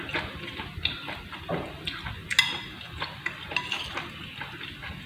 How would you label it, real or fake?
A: real